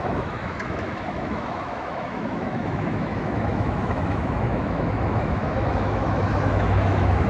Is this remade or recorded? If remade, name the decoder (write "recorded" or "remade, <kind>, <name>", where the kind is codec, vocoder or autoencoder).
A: remade, autoencoder, DAC-VAE